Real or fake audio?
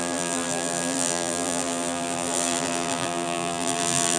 fake